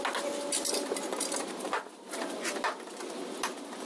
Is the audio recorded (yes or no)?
yes